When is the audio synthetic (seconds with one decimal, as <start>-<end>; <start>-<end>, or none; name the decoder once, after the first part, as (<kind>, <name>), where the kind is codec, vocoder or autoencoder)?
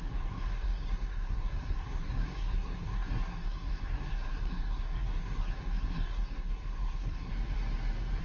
0.0-7.3 (codec, SNAC)